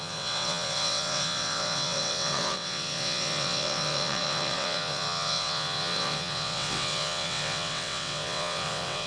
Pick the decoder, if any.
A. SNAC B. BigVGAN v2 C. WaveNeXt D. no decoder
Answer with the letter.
C